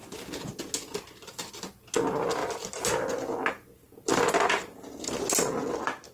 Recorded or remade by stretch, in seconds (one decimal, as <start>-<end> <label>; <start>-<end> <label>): 0.0-6.1 recorded